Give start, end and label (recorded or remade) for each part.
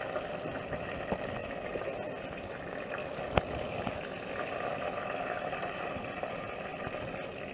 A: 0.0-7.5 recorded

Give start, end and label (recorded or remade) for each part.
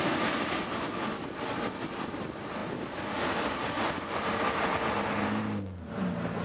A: 0.0-6.4 recorded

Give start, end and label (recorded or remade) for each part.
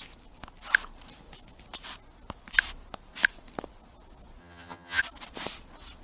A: 0.0-4.4 recorded; 4.4-5.0 remade; 5.0-6.0 recorded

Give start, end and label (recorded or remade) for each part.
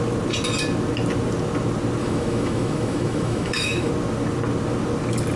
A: 0.0-2.0 recorded; 2.0-3.9 remade; 3.9-5.4 recorded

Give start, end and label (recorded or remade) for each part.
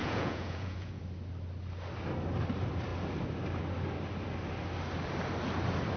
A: 0.0-1.0 remade; 1.0-6.0 recorded